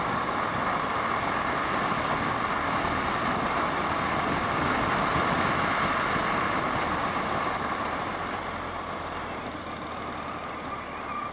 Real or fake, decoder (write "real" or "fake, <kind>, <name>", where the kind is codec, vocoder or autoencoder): real